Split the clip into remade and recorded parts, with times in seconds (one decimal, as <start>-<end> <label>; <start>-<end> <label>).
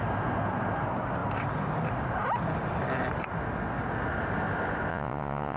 0.0-4.9 recorded; 4.9-5.6 remade